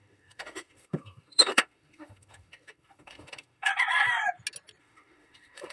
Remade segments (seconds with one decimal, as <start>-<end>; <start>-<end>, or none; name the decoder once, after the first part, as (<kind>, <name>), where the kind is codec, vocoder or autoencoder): 0.0-3.7 (autoencoder, DAC-VAE); 4.8-5.7